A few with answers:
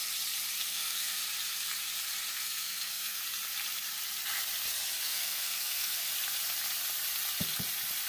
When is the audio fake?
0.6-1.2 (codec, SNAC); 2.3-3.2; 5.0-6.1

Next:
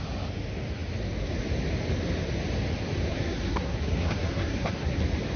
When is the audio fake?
3.1-5.0 (codec, SNAC)

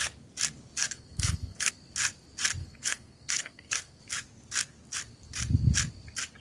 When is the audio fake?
0.8-1.7 (codec, SNAC); 2.6-4.0